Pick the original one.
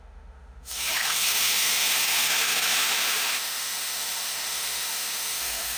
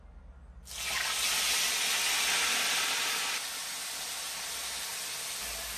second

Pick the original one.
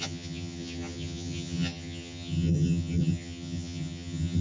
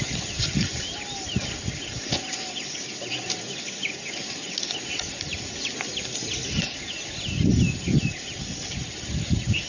second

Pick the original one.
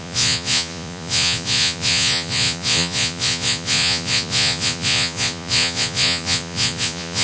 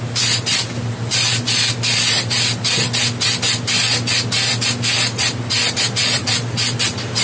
second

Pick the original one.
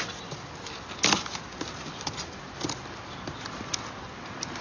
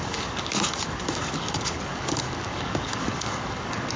first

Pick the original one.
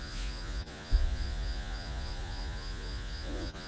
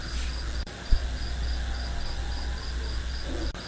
second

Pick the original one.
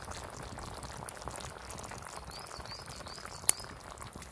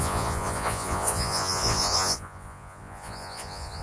first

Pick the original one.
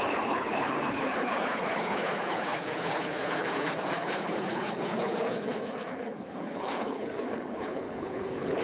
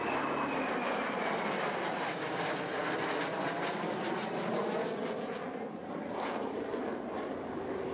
second